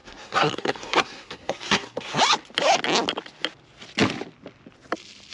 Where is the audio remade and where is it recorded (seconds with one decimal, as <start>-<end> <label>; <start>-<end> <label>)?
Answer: 0.0-2.2 remade; 2.2-5.3 recorded